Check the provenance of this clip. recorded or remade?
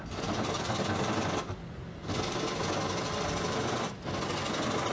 recorded